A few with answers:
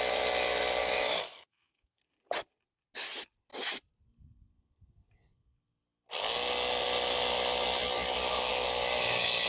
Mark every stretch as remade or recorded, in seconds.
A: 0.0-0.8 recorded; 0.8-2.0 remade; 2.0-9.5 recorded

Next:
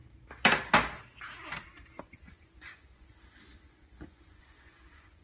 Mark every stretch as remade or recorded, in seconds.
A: 0.0-2.0 recorded; 2.0-5.2 remade

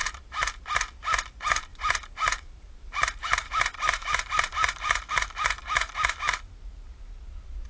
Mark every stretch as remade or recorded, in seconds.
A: 0.0-0.6 remade; 0.6-1.7 recorded; 1.7-5.1 remade; 5.1-7.7 recorded

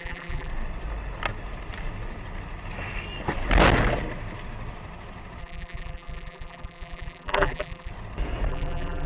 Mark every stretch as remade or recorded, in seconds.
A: 0.0-0.5 remade; 0.5-5.4 recorded; 5.4-7.9 remade; 7.9-8.5 recorded; 8.5-9.1 remade